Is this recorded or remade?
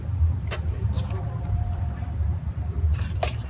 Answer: remade